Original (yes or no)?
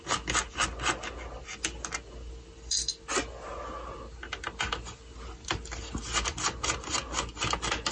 yes